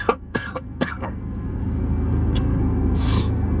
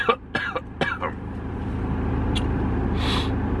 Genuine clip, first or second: second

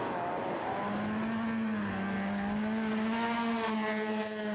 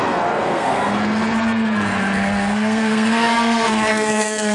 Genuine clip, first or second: first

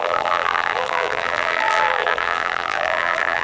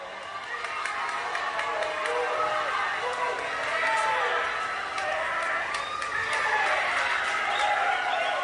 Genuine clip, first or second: second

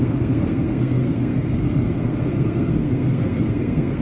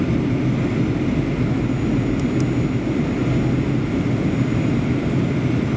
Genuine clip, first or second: second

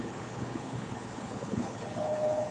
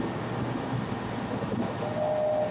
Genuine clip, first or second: second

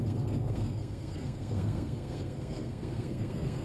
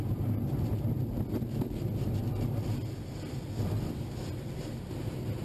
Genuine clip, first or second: second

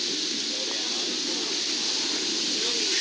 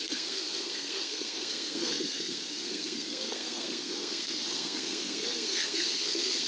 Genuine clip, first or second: first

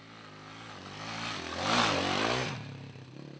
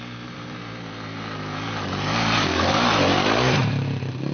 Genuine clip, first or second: first